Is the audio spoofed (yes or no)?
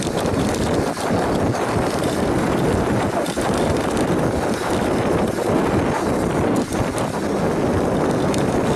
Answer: no